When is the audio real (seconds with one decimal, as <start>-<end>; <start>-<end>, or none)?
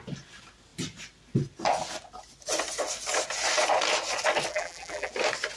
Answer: 0.0-4.5; 5.1-5.6